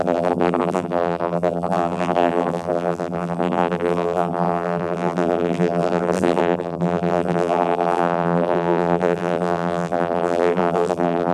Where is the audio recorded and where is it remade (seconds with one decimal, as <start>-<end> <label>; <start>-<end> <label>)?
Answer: 0.0-11.3 remade

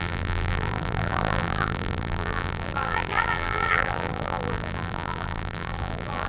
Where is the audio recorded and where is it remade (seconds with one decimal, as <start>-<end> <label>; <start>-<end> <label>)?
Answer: 0.0-6.3 remade

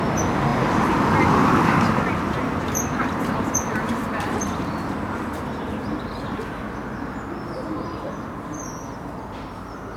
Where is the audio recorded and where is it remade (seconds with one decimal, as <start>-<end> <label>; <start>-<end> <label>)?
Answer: 0.0-0.5 recorded; 0.5-4.7 remade; 4.7-10.0 recorded

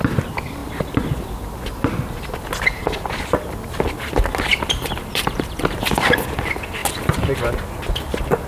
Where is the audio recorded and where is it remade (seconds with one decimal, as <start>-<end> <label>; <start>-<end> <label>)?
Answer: 0.0-0.6 recorded; 0.6-1.3 remade; 1.3-4.5 recorded; 4.5-5.6 remade; 5.6-8.5 recorded

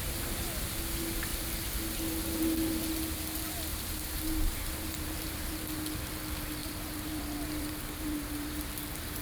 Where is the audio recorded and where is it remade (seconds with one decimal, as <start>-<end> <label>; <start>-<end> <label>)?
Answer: 0.0-3.7 recorded; 3.7-5.6 remade; 5.6-6.6 recorded; 6.6-8.7 remade; 8.7-9.2 recorded

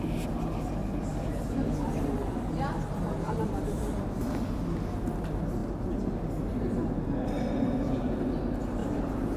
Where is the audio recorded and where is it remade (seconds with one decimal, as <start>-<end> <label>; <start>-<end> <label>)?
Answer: 0.0-8.8 recorded; 8.8-9.4 remade

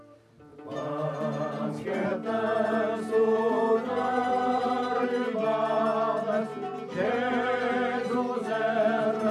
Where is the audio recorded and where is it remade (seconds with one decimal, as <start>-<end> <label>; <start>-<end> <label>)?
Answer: 0.0-0.5 recorded; 0.5-1.7 remade; 1.7-4.1 recorded; 4.1-4.6 remade; 4.6-9.3 recorded